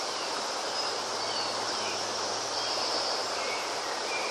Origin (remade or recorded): recorded